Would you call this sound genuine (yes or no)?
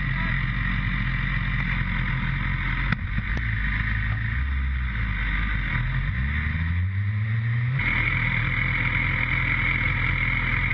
yes